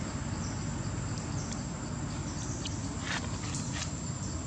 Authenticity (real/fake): real